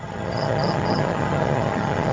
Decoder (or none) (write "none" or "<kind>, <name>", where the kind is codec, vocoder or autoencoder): vocoder, HiFi-GAN